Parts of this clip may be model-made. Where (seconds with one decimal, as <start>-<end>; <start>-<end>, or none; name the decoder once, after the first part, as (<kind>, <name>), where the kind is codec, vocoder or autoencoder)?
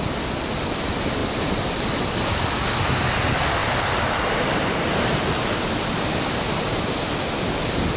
none